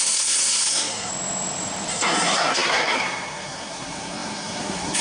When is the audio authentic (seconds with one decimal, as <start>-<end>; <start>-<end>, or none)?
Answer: 1.1-1.9